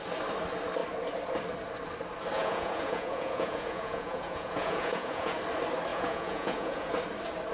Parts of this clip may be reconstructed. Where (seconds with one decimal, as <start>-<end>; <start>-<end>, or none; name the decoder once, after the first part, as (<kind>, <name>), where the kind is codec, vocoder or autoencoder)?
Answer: 2.4-5.4 (vocoder, Vocos); 5.9-6.9